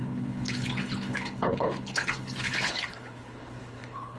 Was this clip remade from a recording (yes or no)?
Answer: yes